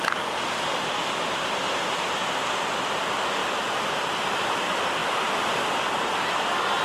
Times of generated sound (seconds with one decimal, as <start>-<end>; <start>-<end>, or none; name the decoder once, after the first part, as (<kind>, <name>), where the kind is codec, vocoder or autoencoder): 5.0-6.3 (vocoder, BigVGAN v2)

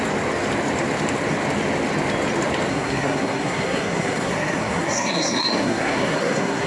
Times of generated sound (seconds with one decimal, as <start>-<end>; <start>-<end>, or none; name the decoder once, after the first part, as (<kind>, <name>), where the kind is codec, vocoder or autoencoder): 2.7-6.7 (codec, SNAC)